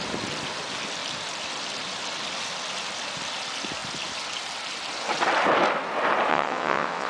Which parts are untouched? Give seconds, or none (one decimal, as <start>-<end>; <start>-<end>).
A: 0.0-6.3